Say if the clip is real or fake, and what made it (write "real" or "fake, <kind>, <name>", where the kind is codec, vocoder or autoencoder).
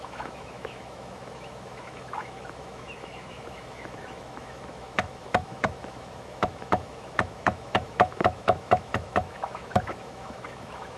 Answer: fake, autoencoder, DAC-VAE